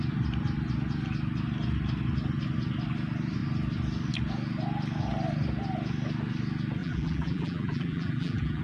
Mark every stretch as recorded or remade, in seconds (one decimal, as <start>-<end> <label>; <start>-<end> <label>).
0.0-6.8 recorded; 6.8-8.6 remade